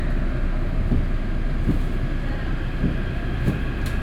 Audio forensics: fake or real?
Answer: real